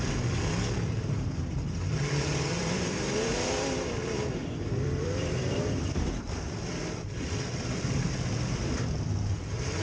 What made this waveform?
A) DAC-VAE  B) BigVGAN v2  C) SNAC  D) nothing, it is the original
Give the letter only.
B